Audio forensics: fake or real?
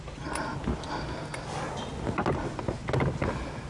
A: real